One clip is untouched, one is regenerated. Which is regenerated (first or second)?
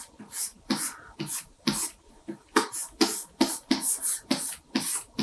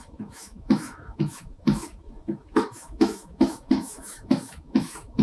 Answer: second